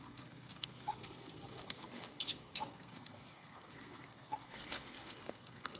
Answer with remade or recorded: remade